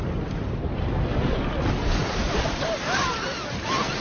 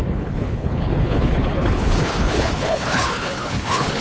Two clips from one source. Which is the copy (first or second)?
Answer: second